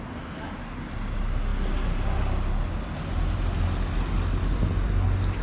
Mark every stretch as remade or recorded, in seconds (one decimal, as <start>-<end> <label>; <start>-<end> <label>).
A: 0.0-5.4 recorded